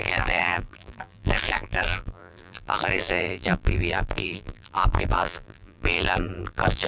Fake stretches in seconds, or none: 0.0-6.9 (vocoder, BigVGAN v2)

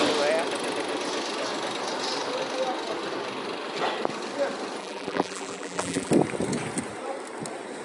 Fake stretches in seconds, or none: 4.8-6.1 (vocoder, BigVGAN v2)

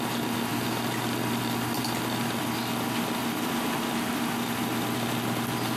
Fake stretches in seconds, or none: none

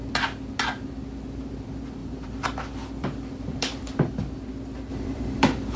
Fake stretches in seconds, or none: 2.0-4.1 (vocoder, BigVGAN v2); 4.9-5.8

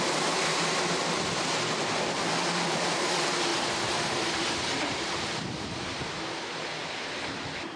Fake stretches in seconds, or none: 3.5-5.5 (vocoder, BigVGAN v2)

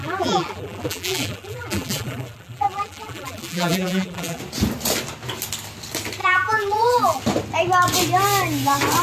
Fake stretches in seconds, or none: 0.0-4.4 (vocoder, BigVGAN v2); 6.2-7.2

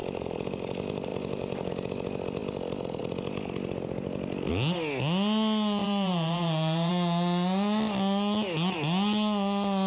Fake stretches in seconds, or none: 0.0-0.6 (vocoder, BigVGAN v2); 1.1-1.7; 5.8-6.9

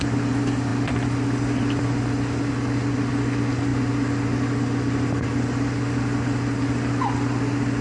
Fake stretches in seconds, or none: none